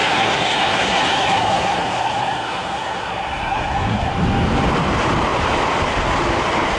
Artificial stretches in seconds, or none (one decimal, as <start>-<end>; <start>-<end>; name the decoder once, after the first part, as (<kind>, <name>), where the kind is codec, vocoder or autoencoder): 0.0-4.1 (codec, SNAC)